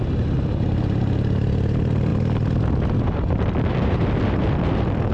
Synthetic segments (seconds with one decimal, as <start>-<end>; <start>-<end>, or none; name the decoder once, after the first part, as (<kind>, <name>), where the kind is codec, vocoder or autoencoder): none